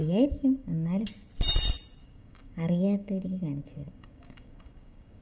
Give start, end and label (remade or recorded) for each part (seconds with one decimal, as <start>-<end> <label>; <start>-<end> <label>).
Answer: 0.0-1.0 remade; 1.0-2.0 recorded; 2.0-5.2 remade